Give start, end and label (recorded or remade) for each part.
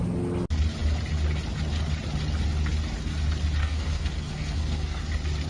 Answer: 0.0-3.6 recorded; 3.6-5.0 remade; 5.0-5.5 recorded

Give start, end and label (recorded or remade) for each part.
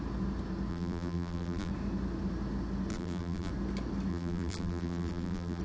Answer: 0.0-0.7 recorded; 0.7-1.7 remade; 1.7-2.9 recorded; 2.9-3.5 remade; 3.5-4.1 recorded; 4.1-5.6 remade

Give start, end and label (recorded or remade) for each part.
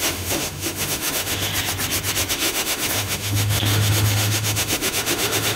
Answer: 0.0-1.5 remade; 1.5-2.3 recorded; 2.3-5.6 remade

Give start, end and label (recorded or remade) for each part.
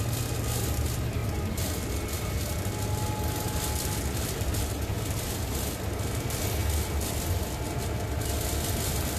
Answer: 0.0-9.2 recorded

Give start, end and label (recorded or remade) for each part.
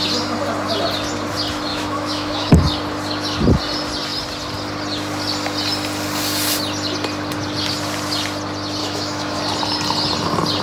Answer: 0.0-1.7 recorded; 1.7-2.5 remade; 2.5-8.8 recorded; 8.8-9.4 remade; 9.4-10.6 recorded